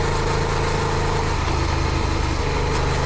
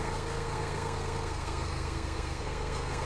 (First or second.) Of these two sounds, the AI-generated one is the second